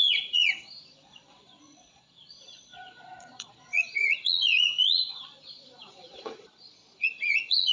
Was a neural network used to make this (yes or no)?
yes